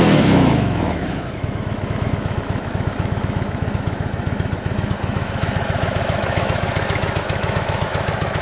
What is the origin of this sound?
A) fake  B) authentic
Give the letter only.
A